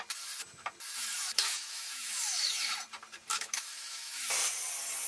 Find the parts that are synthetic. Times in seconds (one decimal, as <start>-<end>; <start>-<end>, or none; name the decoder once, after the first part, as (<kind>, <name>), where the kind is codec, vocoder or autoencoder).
1.1-2.7 (autoencoder, DAC-VAE); 3.3-4.3